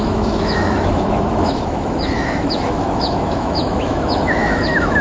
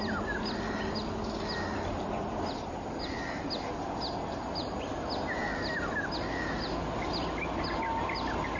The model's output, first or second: first